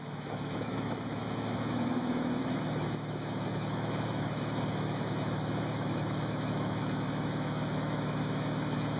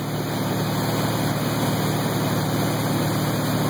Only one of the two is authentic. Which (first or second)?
second